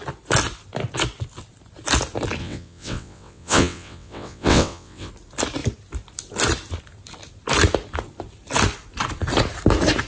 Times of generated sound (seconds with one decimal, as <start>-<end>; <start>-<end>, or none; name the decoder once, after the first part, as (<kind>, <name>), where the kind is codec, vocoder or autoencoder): 2.4-5.1 (vocoder, WaveNeXt)